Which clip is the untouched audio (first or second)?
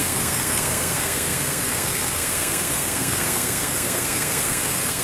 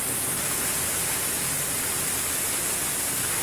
second